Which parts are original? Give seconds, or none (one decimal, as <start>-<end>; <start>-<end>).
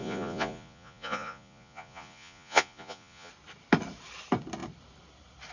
3.3-5.5